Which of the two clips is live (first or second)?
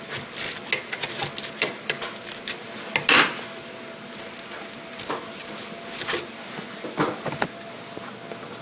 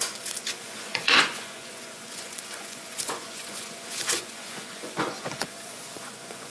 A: first